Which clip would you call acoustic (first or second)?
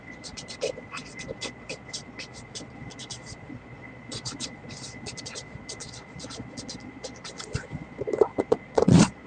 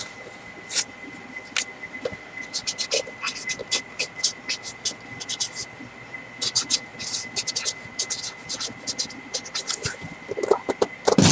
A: second